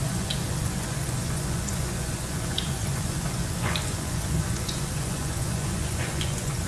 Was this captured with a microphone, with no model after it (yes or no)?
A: no